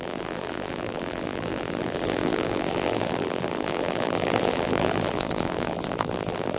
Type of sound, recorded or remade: remade